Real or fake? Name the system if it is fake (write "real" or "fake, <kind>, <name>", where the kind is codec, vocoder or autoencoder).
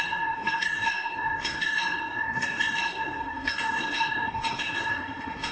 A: fake, codec, SNAC